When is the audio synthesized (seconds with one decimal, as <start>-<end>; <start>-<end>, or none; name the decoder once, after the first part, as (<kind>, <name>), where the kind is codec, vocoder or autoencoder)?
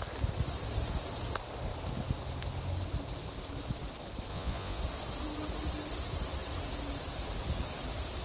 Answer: 4.3-4.8 (vocoder, Vocos)